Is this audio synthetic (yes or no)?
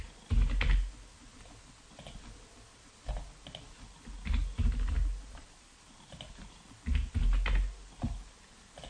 no